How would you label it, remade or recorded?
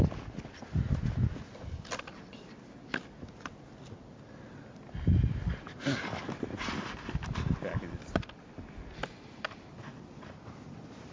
recorded